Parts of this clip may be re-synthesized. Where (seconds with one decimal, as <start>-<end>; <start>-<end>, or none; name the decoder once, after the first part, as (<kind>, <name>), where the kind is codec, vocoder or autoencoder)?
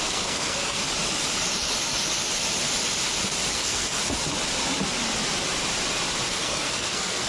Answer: 0.0-0.8 (codec, SNAC); 3.5-4.0; 6.3-7.3